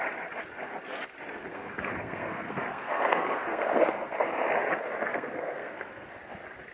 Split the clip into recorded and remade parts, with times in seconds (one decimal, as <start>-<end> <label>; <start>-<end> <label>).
0.0-1.4 recorded; 1.4-4.3 remade; 4.3-5.1 recorded; 5.1-6.1 remade; 6.1-6.7 recorded